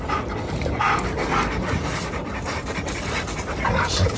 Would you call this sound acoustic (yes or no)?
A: yes